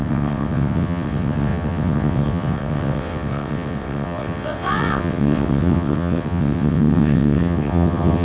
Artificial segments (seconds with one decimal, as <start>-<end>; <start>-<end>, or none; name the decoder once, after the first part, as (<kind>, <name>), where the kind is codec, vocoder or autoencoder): 0.0-8.2 (vocoder, WaveNeXt)